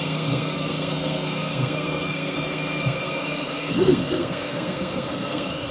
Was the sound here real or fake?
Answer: fake